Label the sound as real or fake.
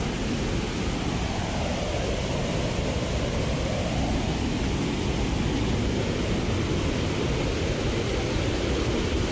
real